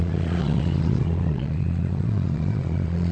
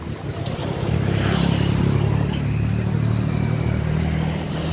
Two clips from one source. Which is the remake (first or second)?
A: first